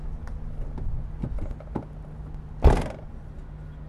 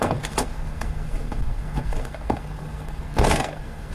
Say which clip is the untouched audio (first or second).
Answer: first